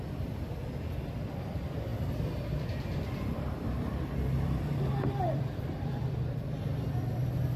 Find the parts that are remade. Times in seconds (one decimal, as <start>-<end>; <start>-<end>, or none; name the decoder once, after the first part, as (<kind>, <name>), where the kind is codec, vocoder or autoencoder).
0.0-7.6 (vocoder, BigVGAN v2)